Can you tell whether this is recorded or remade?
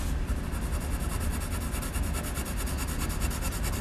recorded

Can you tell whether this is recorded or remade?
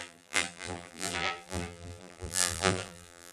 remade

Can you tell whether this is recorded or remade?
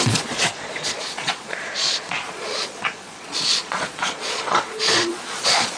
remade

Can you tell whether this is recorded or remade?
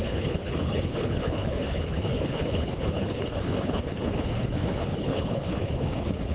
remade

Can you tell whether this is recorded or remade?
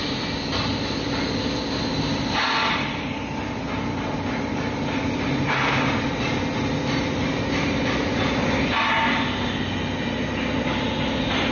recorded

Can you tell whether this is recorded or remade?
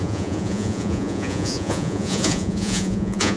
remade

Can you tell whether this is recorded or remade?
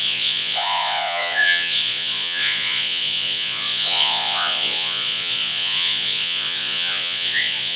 remade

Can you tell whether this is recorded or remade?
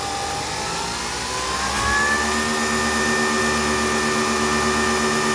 recorded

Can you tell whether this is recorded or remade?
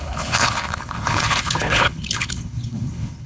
remade